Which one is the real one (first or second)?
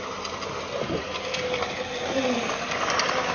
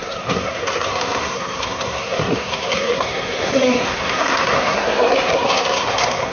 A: first